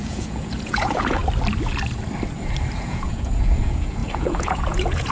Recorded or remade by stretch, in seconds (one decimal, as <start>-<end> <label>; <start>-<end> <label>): 0.0-1.2 remade; 1.2-2.8 recorded; 2.8-5.1 remade